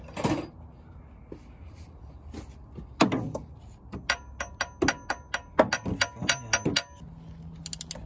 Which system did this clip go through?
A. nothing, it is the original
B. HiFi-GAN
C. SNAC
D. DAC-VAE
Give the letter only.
A